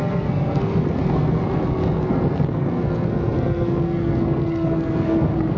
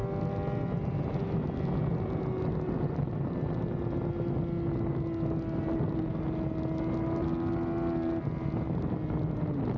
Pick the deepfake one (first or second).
first